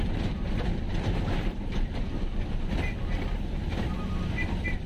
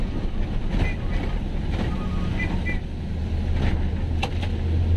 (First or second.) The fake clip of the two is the first